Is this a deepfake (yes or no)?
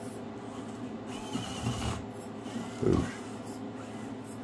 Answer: no